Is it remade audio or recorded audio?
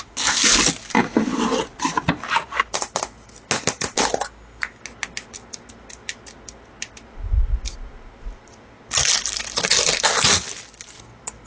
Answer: recorded